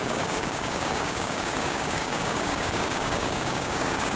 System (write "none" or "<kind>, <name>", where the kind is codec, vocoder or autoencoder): codec, DAC